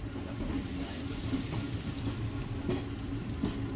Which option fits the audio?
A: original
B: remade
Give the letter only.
A